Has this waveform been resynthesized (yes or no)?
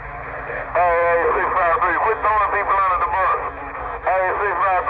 no